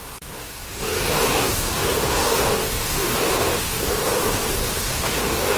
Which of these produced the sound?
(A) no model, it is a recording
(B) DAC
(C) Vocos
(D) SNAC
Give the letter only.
B